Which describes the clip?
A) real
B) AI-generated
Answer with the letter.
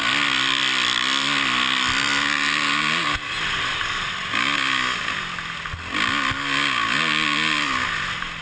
A